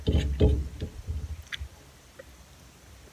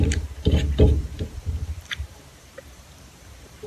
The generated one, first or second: second